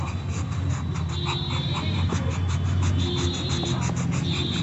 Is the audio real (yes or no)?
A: yes